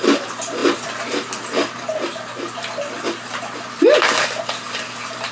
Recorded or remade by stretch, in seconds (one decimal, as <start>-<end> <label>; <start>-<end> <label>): 0.0-5.3 recorded